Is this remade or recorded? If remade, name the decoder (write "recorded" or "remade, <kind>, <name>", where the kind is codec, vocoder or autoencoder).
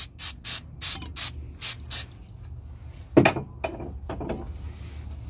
recorded